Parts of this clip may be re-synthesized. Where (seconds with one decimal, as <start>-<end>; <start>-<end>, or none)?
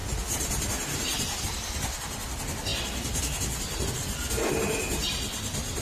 0.0-1.4